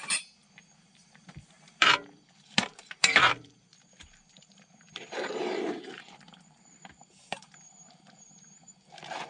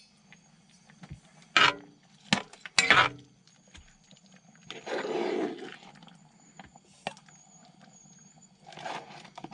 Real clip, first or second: second